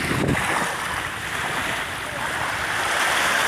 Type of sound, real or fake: real